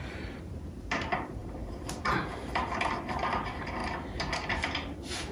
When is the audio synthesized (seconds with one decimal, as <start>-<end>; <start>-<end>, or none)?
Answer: 0.0-3.8; 4.3-5.3